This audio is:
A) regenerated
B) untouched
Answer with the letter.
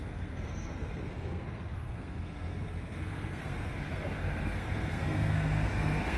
A